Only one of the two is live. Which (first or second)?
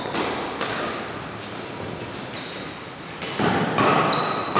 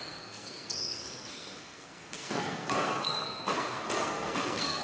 first